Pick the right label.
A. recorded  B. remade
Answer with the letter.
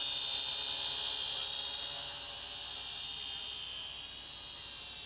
A